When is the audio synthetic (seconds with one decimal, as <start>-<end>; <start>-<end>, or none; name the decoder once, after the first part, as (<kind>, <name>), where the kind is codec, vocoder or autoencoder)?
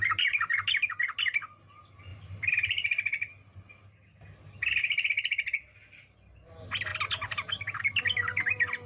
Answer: none